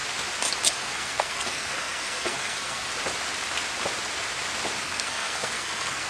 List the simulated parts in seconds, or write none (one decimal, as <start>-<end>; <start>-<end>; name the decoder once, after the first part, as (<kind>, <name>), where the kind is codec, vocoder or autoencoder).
0.6-2.9 (codec, SNAC); 4.8-6.1